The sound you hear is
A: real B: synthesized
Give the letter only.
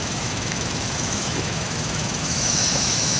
B